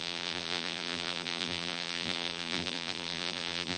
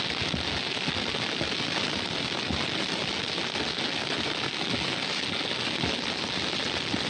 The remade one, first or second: first